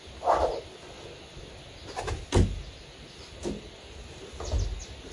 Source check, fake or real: real